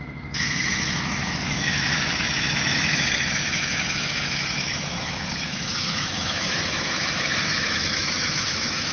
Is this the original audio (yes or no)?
no